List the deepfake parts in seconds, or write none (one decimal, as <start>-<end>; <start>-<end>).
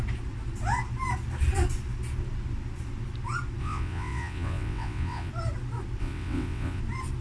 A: 3.6-5.3; 6.0-6.8